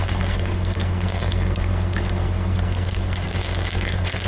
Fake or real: fake